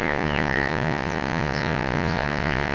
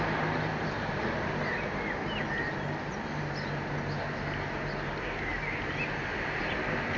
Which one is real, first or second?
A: second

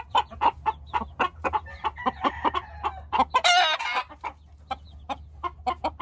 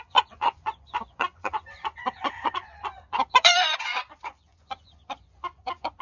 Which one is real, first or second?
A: first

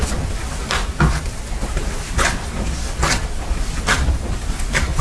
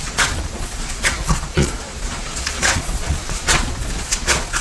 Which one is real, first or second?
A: first